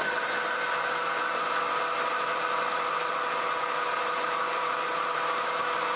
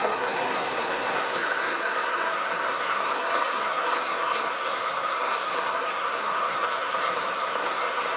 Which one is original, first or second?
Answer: first